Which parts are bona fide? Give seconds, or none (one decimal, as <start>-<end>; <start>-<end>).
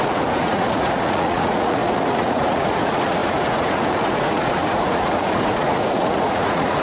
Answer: none